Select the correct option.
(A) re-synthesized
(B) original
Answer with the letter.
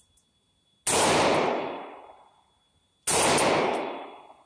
B